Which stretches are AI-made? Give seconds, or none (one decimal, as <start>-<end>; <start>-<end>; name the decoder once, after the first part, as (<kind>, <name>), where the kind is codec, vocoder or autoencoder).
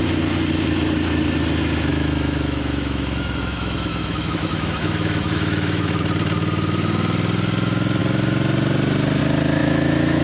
1.9-6.0 (autoencoder, DAC-VAE); 9.6-10.2